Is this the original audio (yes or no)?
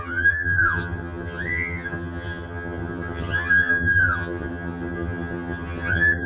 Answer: no